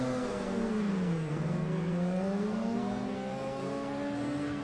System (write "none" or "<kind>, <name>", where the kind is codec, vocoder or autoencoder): codec, SNAC